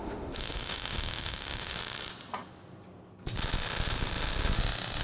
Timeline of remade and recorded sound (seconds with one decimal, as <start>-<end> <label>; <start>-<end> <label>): 0.0-1.8 remade; 1.8-5.0 recorded